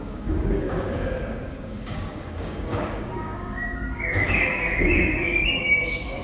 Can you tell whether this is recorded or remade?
remade